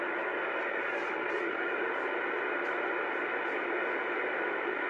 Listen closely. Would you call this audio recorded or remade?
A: recorded